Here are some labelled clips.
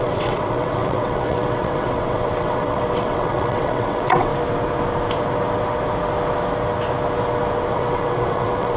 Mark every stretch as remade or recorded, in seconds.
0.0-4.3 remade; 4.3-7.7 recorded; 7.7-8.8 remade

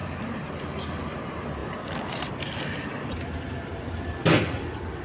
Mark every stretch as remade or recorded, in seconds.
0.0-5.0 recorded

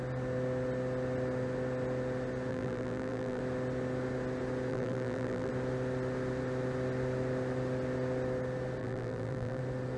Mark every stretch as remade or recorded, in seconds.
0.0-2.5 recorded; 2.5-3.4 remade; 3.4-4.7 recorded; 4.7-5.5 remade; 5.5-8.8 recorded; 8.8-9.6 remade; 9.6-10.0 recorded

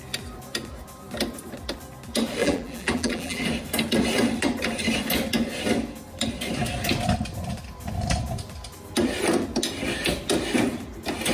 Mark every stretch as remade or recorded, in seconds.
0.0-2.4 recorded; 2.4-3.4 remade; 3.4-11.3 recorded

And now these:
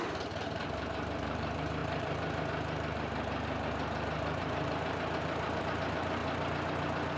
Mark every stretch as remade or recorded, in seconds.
0.0-6.2 remade; 6.2-7.2 recorded

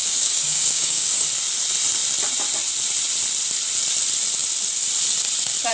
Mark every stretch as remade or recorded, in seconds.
0.0-1.2 remade; 1.2-5.7 recorded

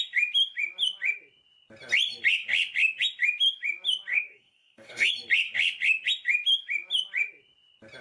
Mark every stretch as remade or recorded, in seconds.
0.0-4.1 recorded; 4.1-5.1 remade; 5.1-8.0 recorded

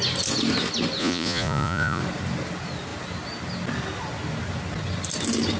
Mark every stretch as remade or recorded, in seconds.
0.0-1.0 recorded; 1.0-2.0 remade; 2.0-5.6 recorded